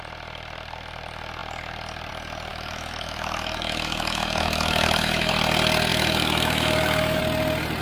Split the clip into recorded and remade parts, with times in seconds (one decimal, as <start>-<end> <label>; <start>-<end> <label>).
0.0-2.5 recorded; 2.5-5.3 remade; 5.3-5.9 recorded; 5.9-7.2 remade; 7.2-7.8 recorded